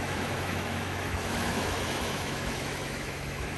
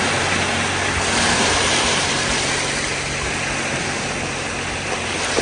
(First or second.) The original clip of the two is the second